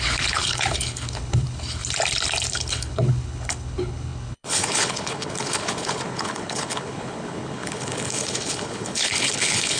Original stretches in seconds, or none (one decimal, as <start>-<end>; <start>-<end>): 1.8-2.5